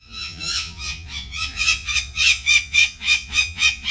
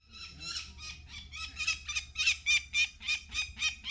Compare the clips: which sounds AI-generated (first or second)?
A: first